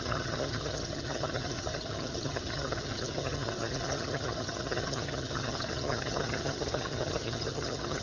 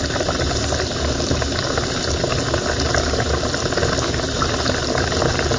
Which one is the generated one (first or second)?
first